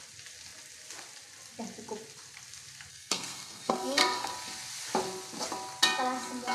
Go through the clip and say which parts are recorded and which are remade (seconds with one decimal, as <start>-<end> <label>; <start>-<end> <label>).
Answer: 0.0-2.9 recorded; 2.9-4.3 remade; 4.3-6.5 recorded